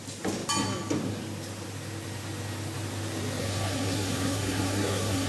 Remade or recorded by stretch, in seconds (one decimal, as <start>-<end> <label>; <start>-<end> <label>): 0.0-3.4 recorded; 3.4-5.3 remade